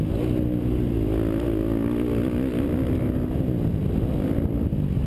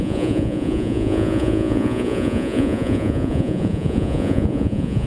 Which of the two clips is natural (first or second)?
first